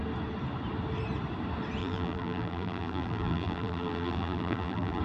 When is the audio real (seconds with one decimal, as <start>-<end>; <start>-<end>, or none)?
0.0-1.8